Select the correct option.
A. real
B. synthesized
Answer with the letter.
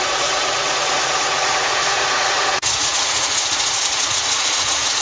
B